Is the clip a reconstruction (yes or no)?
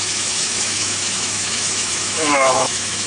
yes